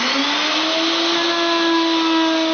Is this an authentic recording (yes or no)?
yes